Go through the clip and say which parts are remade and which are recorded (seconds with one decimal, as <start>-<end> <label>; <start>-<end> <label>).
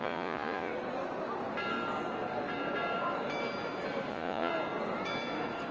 0.0-0.7 remade; 0.7-4.1 recorded; 4.1-4.5 remade; 4.5-5.7 recorded